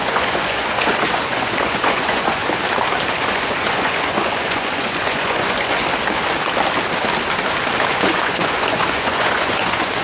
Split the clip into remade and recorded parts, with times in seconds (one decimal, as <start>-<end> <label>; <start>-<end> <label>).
0.0-2.4 remade; 2.4-3.1 recorded; 3.1-5.8 remade; 5.8-7.9 recorded; 7.9-10.0 remade